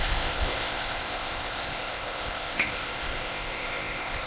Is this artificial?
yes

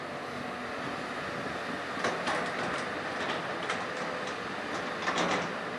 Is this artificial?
no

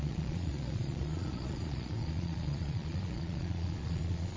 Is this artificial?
yes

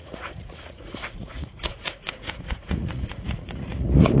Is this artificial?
yes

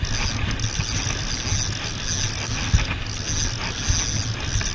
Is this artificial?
no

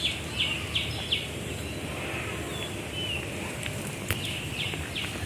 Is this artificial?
no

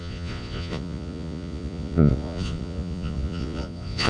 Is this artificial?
yes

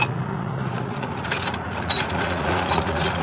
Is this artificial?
yes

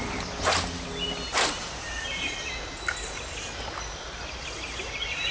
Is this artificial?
no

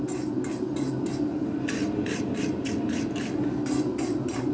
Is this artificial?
no